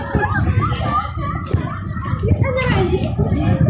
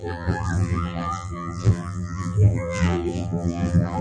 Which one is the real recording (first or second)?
first